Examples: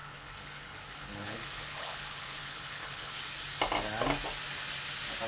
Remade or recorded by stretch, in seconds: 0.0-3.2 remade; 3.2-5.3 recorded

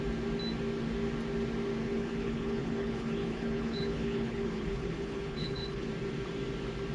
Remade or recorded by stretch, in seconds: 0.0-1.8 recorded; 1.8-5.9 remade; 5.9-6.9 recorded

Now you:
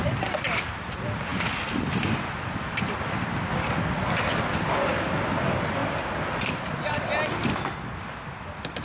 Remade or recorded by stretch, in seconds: 0.0-8.8 recorded